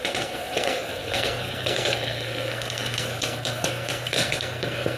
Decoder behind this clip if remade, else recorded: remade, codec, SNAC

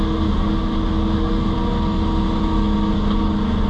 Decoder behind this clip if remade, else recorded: recorded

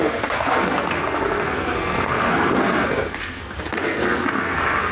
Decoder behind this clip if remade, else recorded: remade, codec, SNAC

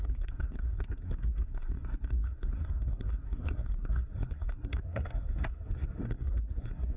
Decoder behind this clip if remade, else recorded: remade, codec, SNAC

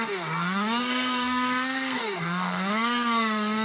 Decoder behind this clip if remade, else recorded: remade, codec, SNAC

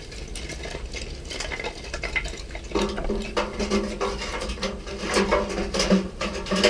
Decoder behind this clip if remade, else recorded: recorded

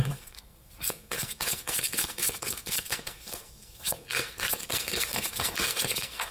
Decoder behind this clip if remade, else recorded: remade, codec, SNAC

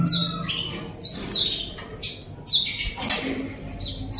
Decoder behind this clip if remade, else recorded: recorded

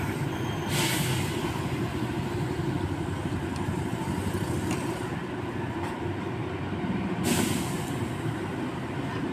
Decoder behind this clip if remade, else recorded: recorded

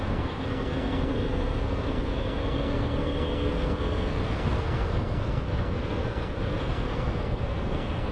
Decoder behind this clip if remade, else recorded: remade, codec, SNAC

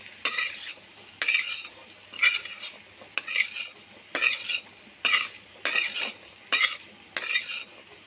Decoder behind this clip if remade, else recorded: recorded